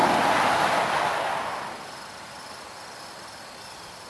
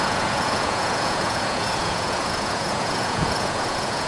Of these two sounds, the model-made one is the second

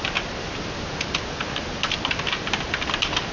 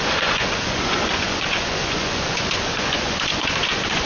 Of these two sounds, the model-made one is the second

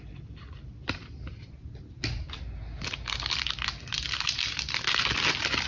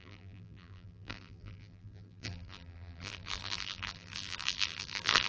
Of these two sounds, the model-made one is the second